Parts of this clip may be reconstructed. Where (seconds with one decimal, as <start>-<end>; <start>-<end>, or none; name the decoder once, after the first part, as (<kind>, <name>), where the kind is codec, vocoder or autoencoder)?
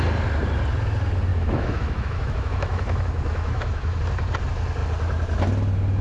1.3-4.0 (autoencoder, DAC-VAE)